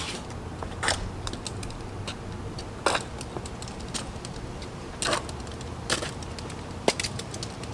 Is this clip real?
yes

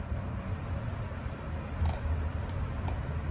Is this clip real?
yes